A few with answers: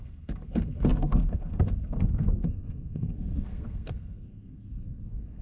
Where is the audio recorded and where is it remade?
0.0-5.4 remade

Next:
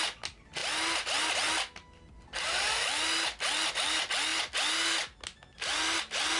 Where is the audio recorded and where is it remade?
0.0-6.4 recorded

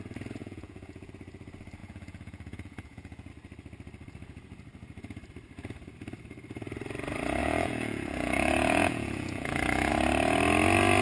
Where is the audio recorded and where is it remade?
0.0-0.4 recorded; 0.4-1.1 remade; 1.1-1.8 recorded; 1.8-3.3 remade; 3.3-7.4 recorded; 7.4-9.9 remade; 9.9-11.0 recorded

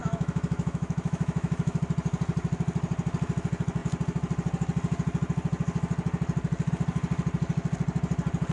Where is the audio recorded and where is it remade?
0.0-1.8 remade; 1.8-8.5 recorded

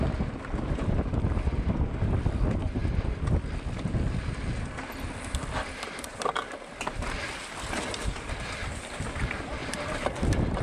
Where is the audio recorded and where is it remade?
0.0-2.8 remade; 2.8-4.5 recorded; 4.5-9.6 remade; 9.6-10.2 recorded; 10.2-10.6 remade

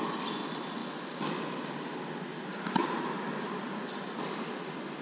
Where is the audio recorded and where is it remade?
0.0-5.0 recorded

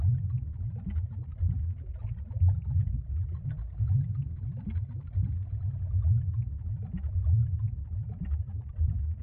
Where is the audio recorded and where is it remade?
0.0-7.4 recorded; 7.4-9.2 remade